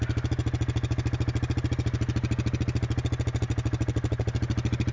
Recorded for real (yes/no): yes